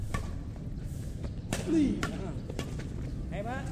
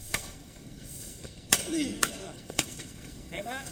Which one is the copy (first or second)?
second